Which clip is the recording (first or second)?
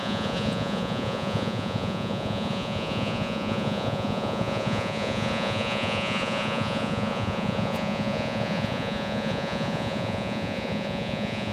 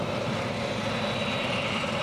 second